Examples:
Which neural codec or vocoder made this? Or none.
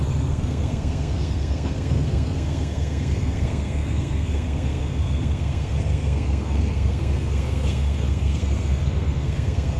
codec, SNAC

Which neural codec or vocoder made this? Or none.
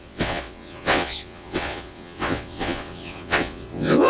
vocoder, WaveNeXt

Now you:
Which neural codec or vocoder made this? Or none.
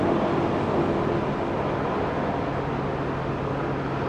none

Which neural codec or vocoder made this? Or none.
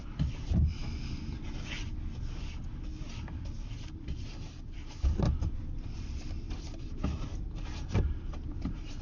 none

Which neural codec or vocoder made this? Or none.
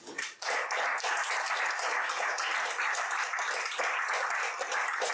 none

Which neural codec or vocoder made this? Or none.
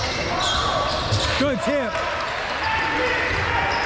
none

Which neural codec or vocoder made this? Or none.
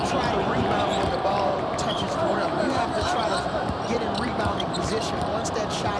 vocoder, BigVGAN v2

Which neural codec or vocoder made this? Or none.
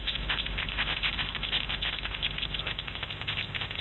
codec, ZipCodec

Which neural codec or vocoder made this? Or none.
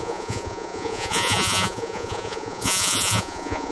vocoder, Vocos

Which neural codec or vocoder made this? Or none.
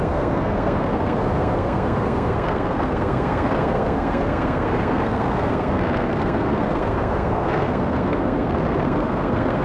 codec, SNAC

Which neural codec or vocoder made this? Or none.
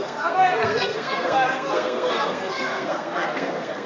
codec, SNAC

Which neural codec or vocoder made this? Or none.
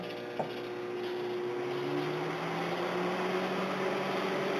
none